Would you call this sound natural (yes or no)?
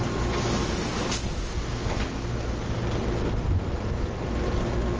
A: yes